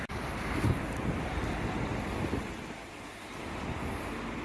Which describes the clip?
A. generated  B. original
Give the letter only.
A